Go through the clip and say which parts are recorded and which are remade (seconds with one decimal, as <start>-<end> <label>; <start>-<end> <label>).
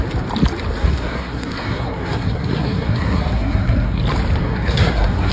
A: 0.0-0.8 recorded; 0.8-4.0 remade; 4.0-4.4 recorded; 4.4-5.3 remade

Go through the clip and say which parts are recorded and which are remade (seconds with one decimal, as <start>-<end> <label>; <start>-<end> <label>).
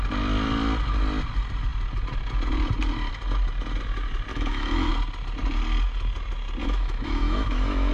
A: 0.0-4.3 recorded; 4.3-4.9 remade; 4.9-6.6 recorded; 6.6-7.9 remade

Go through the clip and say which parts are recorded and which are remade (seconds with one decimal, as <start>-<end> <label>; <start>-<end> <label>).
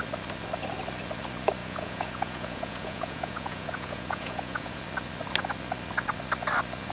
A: 0.0-1.6 recorded; 1.6-4.8 remade; 4.8-6.9 recorded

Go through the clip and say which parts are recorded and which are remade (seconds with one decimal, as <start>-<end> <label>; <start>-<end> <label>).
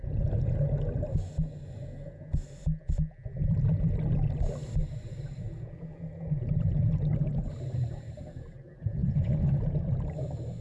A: 0.0-9.0 recorded; 9.0-9.6 remade; 9.6-10.6 recorded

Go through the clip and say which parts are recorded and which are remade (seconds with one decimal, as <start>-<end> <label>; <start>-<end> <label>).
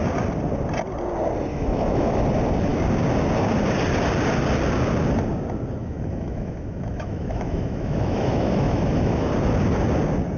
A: 0.0-1.5 recorded; 1.5-2.2 remade; 2.2-5.8 recorded; 5.8-9.3 remade; 9.3-10.4 recorded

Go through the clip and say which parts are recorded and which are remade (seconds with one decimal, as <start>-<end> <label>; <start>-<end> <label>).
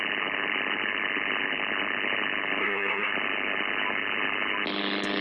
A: 0.0-2.6 recorded; 2.6-3.1 remade; 3.1-5.2 recorded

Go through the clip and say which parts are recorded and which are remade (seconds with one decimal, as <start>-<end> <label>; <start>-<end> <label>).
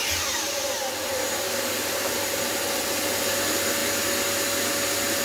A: 0.0-3.1 remade; 3.1-5.2 recorded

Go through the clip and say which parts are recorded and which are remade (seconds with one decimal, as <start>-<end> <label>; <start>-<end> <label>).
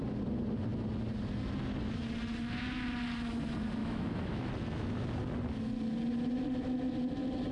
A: 0.0-3.8 recorded; 3.8-4.5 remade; 4.5-7.5 recorded